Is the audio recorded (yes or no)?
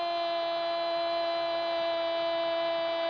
yes